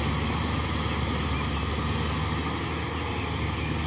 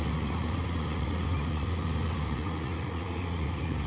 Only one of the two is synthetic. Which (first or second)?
second